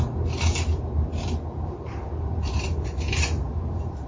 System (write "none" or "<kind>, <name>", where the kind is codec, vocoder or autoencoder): vocoder, BigVGAN v2